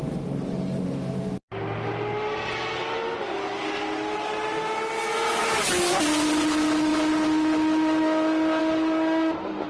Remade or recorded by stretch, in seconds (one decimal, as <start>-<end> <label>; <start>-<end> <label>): 0.0-9.7 recorded